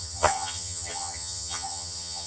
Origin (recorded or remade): remade